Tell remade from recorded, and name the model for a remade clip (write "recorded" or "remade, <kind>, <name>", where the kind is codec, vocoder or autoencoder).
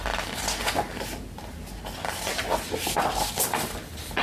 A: recorded